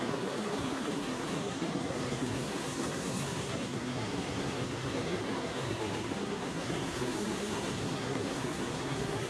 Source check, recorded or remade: remade